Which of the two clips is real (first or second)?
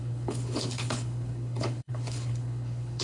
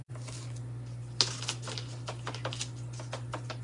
second